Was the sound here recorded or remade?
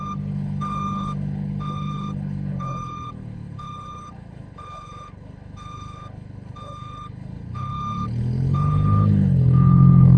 remade